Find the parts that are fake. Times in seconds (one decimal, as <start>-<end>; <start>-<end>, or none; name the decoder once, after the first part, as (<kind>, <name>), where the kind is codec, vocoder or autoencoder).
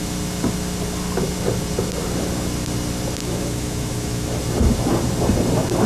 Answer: 3.2-4.4 (autoencoder, DAC-VAE)